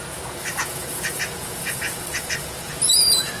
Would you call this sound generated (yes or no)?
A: yes